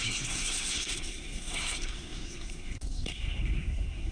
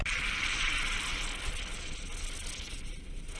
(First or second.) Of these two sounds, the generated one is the first